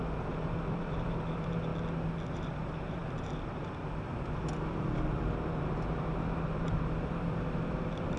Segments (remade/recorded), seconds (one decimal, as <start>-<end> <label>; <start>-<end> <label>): 0.0-1.7 remade; 1.7-2.3 recorded; 2.3-8.2 remade